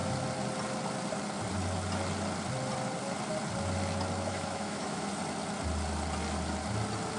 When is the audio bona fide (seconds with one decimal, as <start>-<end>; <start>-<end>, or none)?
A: 0.0-4.3; 5.1-7.2